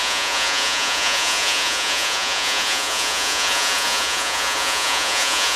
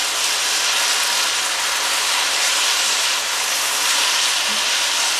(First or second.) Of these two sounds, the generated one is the first